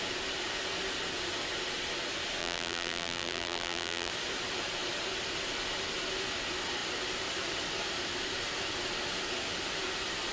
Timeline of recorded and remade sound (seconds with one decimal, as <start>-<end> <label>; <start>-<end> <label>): 0.0-2.4 recorded; 2.4-4.1 remade; 4.1-10.3 recorded